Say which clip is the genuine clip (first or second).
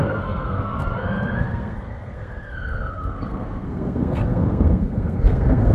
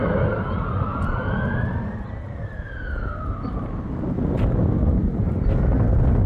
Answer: second